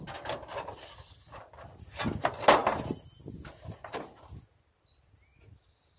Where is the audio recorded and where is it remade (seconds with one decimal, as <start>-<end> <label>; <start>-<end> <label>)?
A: 0.0-6.0 recorded